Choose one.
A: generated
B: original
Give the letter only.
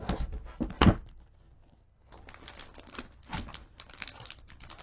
B